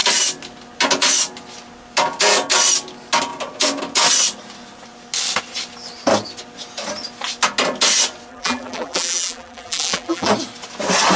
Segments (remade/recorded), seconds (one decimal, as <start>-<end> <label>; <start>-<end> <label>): 0.0-8.3 recorded; 8.3-10.3 remade; 10.3-11.2 recorded